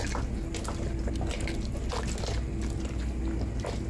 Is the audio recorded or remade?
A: recorded